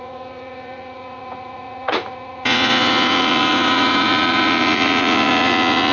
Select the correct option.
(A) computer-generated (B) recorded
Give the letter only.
A